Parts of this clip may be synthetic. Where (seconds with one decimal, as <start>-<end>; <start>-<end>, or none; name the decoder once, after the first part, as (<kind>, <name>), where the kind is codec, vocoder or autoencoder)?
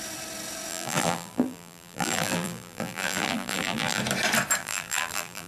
0.7-4.0 (vocoder, BigVGAN v2); 4.6-5.5